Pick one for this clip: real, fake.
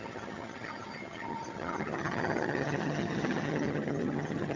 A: fake